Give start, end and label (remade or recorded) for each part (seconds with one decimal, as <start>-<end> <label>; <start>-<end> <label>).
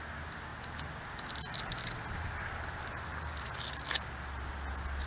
0.0-5.1 recorded